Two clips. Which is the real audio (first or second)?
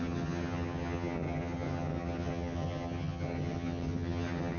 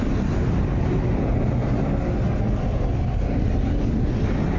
second